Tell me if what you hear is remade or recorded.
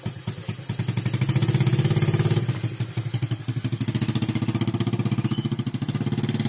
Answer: recorded